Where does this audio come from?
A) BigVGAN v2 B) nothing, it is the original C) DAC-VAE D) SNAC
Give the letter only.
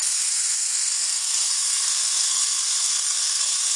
D